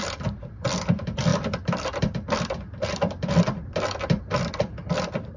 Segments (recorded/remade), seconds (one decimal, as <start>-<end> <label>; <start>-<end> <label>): 0.0-5.4 recorded